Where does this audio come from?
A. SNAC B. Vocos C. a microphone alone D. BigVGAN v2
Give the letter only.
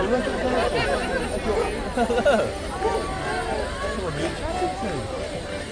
C